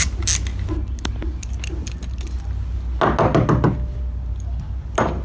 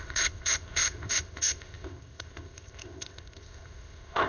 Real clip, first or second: first